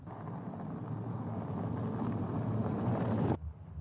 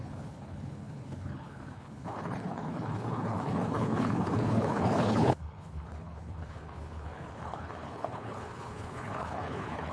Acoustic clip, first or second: first